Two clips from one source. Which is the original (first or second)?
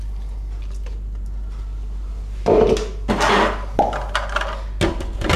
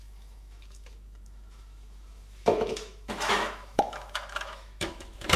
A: first